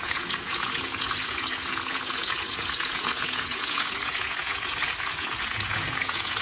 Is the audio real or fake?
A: fake